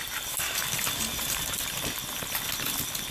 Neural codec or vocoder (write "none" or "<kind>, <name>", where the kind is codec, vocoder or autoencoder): none